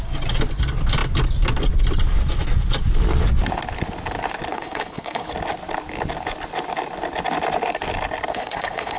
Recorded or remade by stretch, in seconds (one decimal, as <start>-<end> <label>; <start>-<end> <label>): 0.0-4.5 recorded; 4.5-5.3 remade; 5.3-8.3 recorded; 8.3-9.0 remade

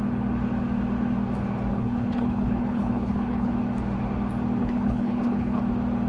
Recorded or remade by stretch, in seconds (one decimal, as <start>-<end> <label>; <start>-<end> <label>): 0.0-1.7 recorded; 1.7-3.5 remade; 3.5-4.6 recorded; 4.6-5.6 remade; 5.6-6.1 recorded

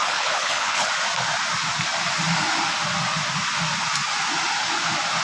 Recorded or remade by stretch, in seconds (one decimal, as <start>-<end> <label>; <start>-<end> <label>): 0.0-0.9 remade; 0.9-5.2 recorded

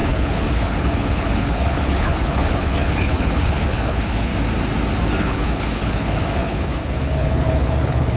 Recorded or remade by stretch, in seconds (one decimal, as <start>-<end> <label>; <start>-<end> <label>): 0.0-4.3 remade; 4.3-5.2 recorded; 5.2-8.2 remade